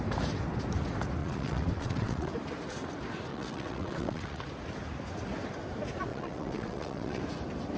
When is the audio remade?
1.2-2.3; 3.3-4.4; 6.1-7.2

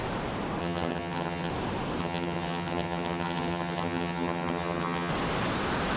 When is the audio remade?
0.6-1.5; 2.0-5.1

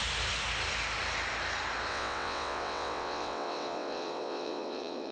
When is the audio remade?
1.9-5.1